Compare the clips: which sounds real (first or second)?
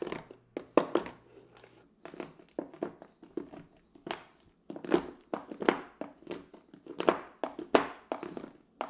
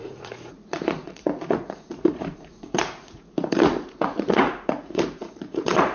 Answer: first